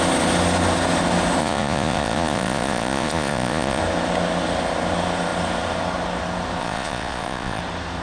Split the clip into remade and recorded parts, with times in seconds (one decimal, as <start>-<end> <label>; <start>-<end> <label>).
0.0-1.4 recorded; 1.4-3.8 remade; 3.8-6.6 recorded; 6.6-7.6 remade; 7.6-8.0 recorded